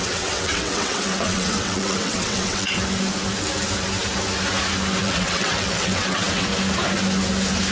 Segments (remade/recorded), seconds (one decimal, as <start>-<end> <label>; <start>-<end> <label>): 0.0-2.8 remade; 2.8-5.0 recorded; 5.0-6.5 remade; 6.5-7.7 recorded